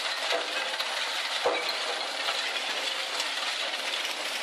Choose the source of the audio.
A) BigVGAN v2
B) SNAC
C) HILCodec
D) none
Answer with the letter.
D